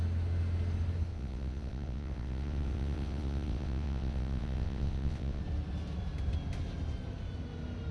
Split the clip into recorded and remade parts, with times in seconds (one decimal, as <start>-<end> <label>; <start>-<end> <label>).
0.0-1.1 recorded; 1.1-5.4 remade; 5.4-7.9 recorded